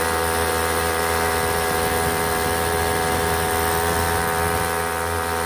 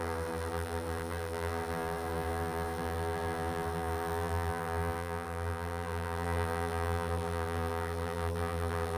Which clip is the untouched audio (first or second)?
first